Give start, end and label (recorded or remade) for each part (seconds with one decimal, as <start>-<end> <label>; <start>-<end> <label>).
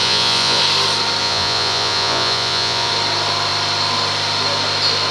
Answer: 0.0-0.6 remade; 0.6-1.2 recorded; 1.2-2.9 remade; 2.9-5.1 recorded